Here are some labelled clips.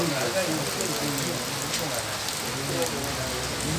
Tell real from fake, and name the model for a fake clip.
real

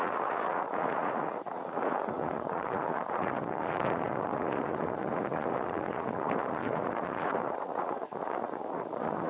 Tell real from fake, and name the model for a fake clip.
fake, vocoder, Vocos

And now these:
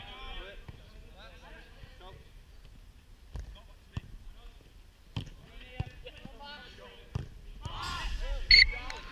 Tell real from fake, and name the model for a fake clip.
real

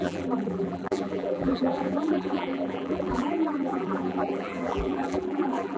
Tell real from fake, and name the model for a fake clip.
fake, vocoder, BigVGAN v2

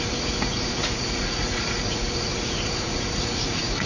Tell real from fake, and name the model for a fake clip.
fake, vocoder, Vocos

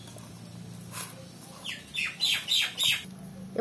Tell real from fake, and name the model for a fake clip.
real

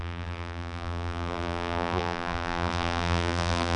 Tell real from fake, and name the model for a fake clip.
fake, vocoder, BigVGAN v2